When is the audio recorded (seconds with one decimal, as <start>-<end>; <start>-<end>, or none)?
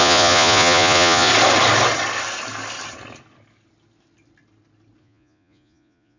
1.3-5.0